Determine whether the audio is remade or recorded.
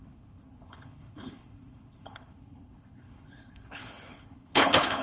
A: remade